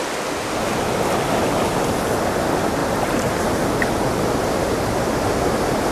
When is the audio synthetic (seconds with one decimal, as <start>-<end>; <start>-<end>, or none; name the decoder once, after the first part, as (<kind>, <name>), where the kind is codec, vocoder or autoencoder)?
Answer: 2.8-3.6 (vocoder, BigVGAN v2)